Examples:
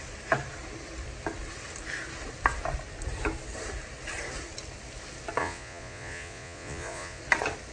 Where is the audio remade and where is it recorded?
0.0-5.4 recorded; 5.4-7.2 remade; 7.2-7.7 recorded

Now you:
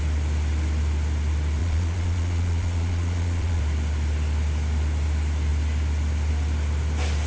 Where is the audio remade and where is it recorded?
0.0-1.6 recorded; 1.6-3.6 remade; 3.6-7.3 recorded

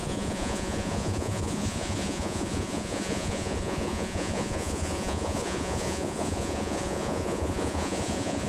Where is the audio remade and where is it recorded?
0.0-8.5 remade

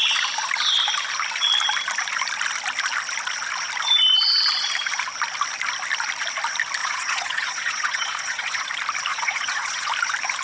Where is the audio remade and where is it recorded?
0.0-6.8 recorded; 6.8-8.7 remade; 8.7-9.1 recorded; 9.1-9.9 remade; 9.9-10.4 recorded